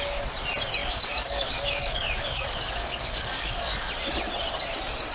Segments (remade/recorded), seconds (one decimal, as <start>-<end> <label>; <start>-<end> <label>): 0.0-0.8 recorded; 0.8-3.9 remade; 3.9-5.1 recorded